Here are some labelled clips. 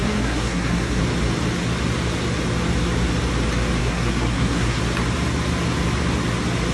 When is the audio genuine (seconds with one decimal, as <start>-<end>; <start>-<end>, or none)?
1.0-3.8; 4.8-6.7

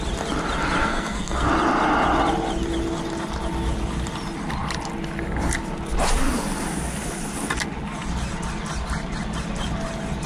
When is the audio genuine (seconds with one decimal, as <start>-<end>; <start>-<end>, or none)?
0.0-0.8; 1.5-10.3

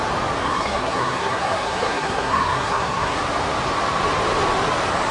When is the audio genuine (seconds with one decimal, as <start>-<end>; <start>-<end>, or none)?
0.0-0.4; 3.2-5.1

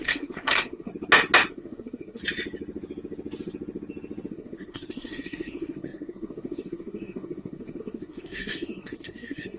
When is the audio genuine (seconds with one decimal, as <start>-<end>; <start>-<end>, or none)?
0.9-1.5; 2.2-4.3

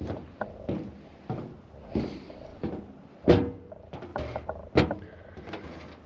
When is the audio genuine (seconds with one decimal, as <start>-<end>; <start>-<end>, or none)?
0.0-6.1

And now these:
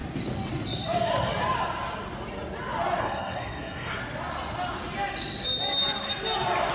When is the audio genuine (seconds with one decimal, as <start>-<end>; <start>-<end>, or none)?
0.0-3.0; 4.0-6.7

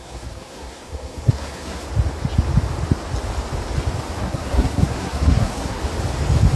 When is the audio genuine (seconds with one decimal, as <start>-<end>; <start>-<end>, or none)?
1.8-4.2; 5.8-6.6

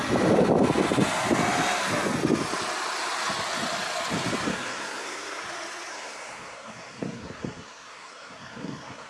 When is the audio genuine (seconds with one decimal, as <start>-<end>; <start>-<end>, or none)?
0.0-4.5; 5.4-5.9